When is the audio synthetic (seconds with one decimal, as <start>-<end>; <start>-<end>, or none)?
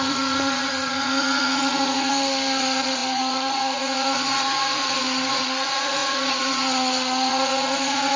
0.0-2.1; 2.6-8.2